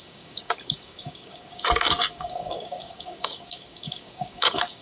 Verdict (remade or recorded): remade